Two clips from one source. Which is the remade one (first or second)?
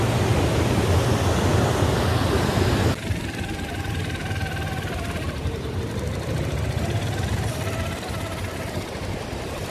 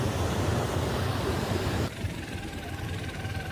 second